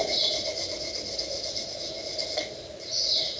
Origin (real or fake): real